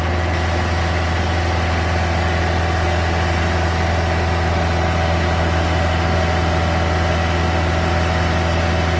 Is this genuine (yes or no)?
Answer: yes